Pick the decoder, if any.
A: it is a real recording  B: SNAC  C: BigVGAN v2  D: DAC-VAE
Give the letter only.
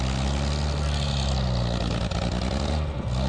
A